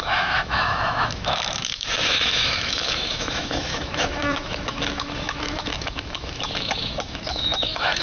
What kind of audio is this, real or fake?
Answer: fake